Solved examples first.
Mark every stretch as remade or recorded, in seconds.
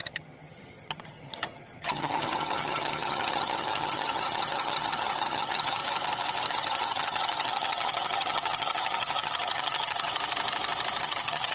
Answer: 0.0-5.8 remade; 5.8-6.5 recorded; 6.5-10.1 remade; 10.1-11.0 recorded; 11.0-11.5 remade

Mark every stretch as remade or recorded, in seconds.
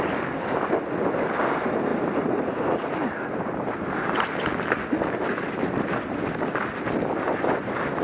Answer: 0.0-8.0 recorded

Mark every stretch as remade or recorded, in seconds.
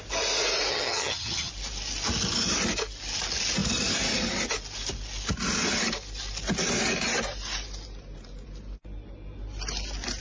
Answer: 0.0-0.7 recorded; 0.7-1.5 remade; 1.5-10.2 recorded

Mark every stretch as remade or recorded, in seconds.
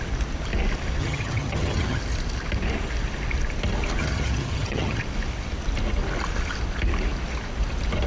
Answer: 0.0-1.0 recorded; 1.0-2.0 remade; 2.0-4.0 recorded; 4.0-5.0 remade; 5.0-8.1 recorded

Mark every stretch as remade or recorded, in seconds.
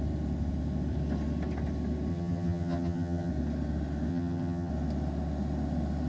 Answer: 0.0-2.1 recorded; 2.1-3.3 remade; 3.3-4.1 recorded; 4.1-4.7 remade; 4.7-6.1 recorded